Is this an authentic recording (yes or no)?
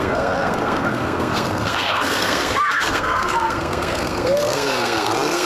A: no